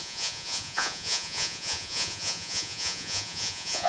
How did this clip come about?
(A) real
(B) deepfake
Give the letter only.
B